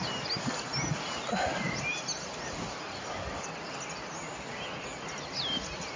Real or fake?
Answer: real